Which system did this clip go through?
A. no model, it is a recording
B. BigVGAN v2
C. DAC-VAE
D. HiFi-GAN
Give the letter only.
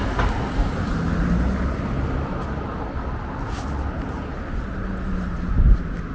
A